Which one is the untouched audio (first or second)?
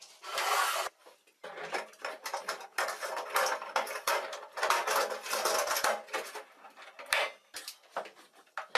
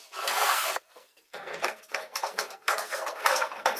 first